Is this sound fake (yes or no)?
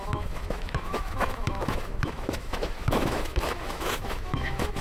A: yes